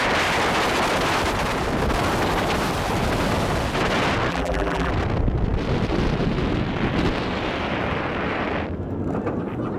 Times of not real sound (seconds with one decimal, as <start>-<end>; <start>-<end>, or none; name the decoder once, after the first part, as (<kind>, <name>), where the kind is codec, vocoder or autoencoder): 4.3-4.9 (vocoder, BigVGAN v2)